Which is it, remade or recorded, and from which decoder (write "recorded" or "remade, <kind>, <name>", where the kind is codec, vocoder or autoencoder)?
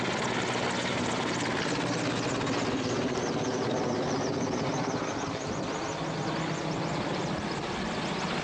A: recorded